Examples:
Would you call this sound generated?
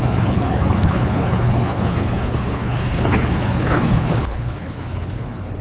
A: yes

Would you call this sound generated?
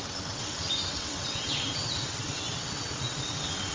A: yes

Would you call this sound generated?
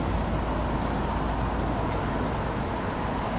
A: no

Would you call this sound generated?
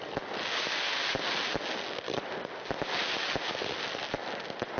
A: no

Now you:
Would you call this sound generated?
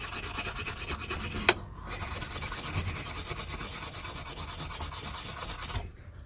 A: no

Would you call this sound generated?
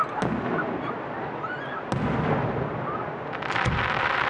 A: no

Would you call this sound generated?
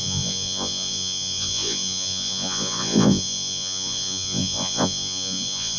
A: yes